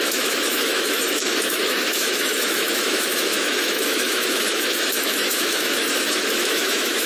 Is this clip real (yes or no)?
no